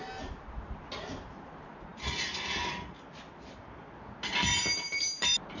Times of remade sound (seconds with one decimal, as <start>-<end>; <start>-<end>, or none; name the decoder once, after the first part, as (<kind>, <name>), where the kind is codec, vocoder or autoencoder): none